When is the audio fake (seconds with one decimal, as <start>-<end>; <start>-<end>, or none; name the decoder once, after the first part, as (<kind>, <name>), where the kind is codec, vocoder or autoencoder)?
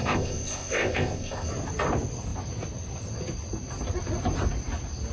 0.0-1.5 (codec, ZipCodec)